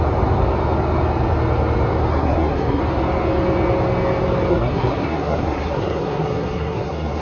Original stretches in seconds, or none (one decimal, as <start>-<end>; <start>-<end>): 0.0-2.1; 2.8-4.5